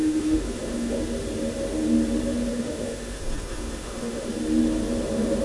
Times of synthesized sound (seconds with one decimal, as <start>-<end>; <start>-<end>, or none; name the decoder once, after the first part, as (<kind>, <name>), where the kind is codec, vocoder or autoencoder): 0.0-1.0 (autoencoder, DAC-VAE); 2.5-4.3